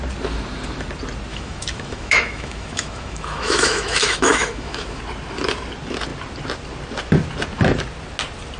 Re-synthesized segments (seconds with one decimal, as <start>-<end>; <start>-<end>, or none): 1.3-5.0